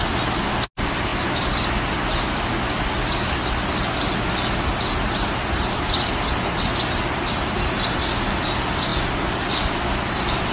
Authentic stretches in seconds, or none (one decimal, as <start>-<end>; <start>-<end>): 0.0-10.5